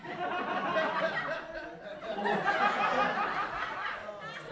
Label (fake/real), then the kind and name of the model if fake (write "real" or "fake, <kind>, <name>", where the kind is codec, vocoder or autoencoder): real